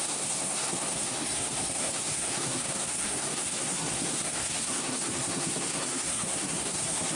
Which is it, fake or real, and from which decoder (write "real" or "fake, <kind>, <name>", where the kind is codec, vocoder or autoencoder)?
fake, codec, SNAC